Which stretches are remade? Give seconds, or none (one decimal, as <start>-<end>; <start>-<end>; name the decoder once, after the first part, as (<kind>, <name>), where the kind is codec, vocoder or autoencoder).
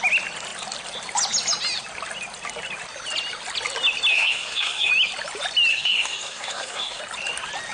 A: 4.1-4.9 (codec, SNAC); 5.7-7.0